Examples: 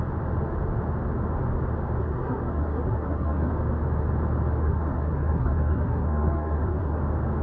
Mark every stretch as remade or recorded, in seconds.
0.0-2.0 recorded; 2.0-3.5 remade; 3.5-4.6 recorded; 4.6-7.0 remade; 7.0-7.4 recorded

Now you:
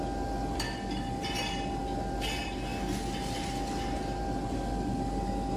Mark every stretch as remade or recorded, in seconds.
0.0-5.6 recorded

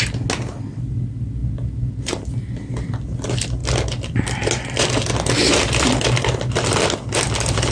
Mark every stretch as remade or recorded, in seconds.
0.0-7.7 recorded

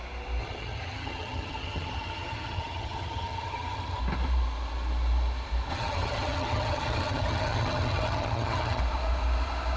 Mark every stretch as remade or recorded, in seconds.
0.0-0.4 recorded; 0.4-4.0 remade; 4.0-5.7 recorded; 5.7-8.8 remade; 8.8-9.8 recorded

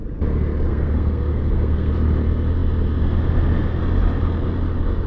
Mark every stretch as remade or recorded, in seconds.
0.0-0.7 recorded; 0.7-1.9 remade; 1.9-5.1 recorded

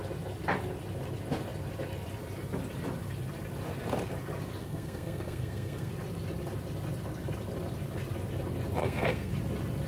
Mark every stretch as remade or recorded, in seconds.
0.0-4.6 recorded; 4.6-5.9 remade; 5.9-8.8 recorded; 8.8-9.3 remade; 9.3-9.9 recorded

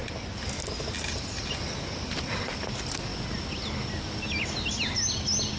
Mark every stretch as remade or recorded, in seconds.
0.0-5.6 recorded